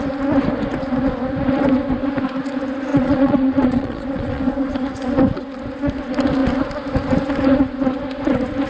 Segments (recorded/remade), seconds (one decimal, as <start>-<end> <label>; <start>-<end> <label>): 0.0-2.9 recorded; 2.9-4.4 remade; 4.4-8.7 recorded